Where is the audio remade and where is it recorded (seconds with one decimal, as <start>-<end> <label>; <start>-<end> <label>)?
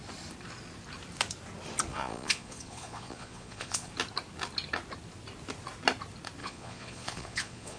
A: 0.0-1.9 recorded; 1.9-3.9 remade; 3.9-6.4 recorded; 6.4-7.8 remade